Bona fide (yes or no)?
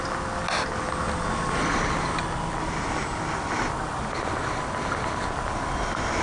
yes